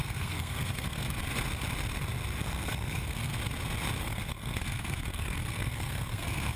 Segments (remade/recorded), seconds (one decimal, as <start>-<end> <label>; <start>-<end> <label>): 0.0-1.2 remade; 1.2-2.4 recorded; 2.4-3.3 remade; 3.3-4.0 recorded; 4.0-6.6 remade